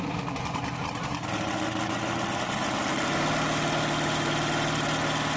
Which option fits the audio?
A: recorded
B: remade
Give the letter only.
A